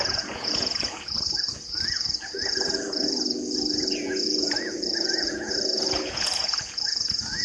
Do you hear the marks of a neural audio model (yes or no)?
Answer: yes